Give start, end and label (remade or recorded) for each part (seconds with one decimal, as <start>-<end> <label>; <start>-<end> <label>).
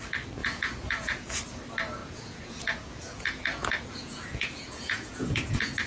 0.0-0.4 recorded; 0.4-1.3 remade; 1.3-2.0 recorded; 2.0-5.5 remade; 5.5-5.9 recorded